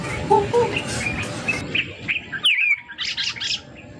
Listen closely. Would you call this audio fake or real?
real